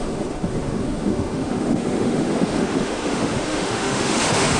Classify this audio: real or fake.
fake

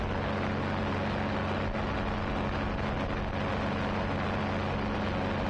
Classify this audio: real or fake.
real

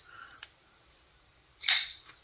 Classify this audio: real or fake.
real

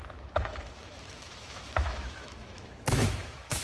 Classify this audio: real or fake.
fake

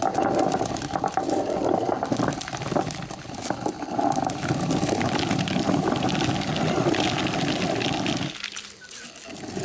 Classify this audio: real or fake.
real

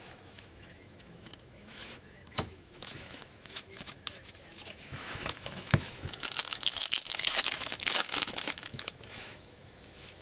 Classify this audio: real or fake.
fake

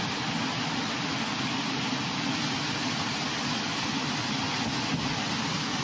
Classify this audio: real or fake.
real